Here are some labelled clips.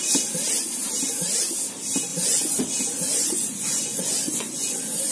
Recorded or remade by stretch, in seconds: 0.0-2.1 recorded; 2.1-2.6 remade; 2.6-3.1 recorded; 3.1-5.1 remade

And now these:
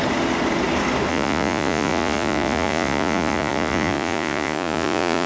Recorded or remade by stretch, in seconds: 0.0-1.1 recorded; 1.1-5.3 remade

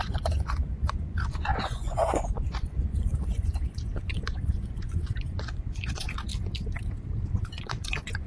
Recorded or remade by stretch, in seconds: 0.0-6.3 remade; 6.3-7.3 recorded; 7.3-8.3 remade

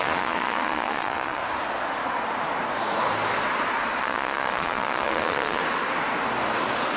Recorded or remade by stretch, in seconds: 0.0-1.4 remade; 1.4-4.0 recorded; 4.0-5.6 remade; 5.6-7.0 recorded

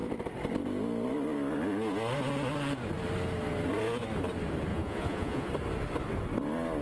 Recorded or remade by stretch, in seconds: 0.0-4.7 recorded; 4.7-5.5 remade; 5.5-6.8 recorded